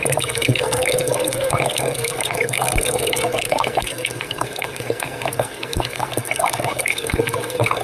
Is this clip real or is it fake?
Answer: fake